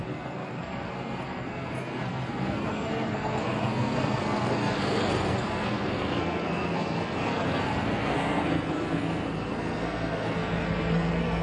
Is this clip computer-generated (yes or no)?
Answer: yes